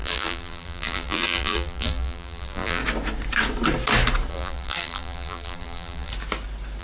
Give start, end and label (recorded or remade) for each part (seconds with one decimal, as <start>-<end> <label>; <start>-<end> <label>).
0.0-2.8 remade; 2.8-4.3 recorded; 4.3-6.1 remade; 6.1-6.8 recorded